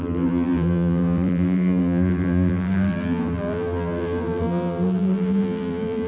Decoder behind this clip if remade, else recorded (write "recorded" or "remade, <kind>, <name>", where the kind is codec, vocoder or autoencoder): remade, vocoder, BigVGAN v2